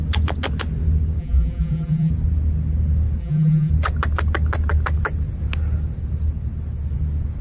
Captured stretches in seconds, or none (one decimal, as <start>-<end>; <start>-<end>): 0.0-1.2; 2.1-3.2; 3.7-7.4